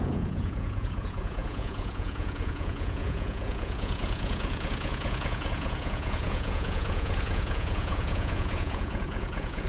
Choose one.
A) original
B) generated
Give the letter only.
B